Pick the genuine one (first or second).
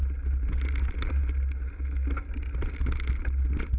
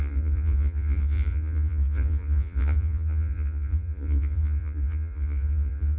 first